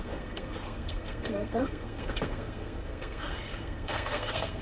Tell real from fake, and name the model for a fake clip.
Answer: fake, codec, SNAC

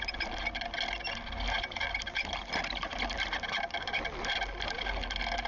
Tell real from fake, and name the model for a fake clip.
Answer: real